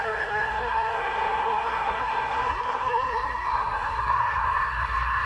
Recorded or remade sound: remade